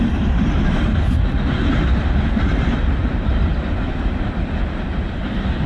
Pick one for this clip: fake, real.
real